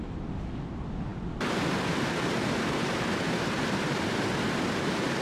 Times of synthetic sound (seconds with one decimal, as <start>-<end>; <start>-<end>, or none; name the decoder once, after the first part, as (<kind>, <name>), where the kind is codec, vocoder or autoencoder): none